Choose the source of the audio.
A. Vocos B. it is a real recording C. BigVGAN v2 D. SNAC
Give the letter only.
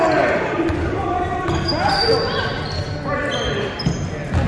B